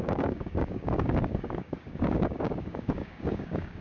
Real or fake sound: fake